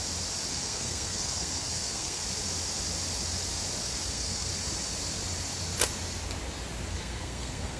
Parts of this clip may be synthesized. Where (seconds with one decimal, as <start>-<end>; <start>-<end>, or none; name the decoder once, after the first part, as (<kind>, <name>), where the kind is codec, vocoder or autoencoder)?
0.5-2.2 (codec, SNAC); 4.1-4.5; 6.9-7.8